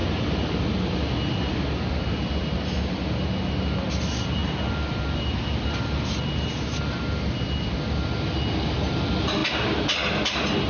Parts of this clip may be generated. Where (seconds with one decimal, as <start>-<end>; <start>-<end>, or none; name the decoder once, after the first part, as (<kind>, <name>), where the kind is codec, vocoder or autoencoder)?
0.0-0.6 (vocoder, BigVGAN v2)